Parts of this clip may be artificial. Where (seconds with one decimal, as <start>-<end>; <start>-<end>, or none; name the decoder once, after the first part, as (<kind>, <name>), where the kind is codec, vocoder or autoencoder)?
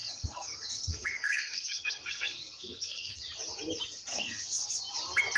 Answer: 0.0-3.2 (codec, SNAC); 4.1-4.8